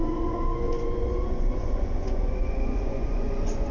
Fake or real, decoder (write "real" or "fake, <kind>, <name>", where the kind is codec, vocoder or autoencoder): fake, vocoder, Vocos